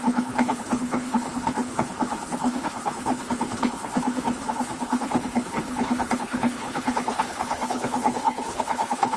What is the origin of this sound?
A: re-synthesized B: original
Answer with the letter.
A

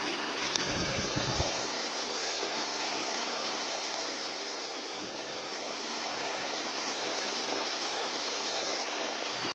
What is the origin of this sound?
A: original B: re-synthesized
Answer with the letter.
B